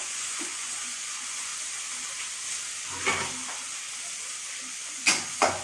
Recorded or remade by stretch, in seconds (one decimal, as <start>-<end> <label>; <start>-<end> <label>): 0.0-1.5 remade; 1.5-4.9 recorded; 4.9-5.6 remade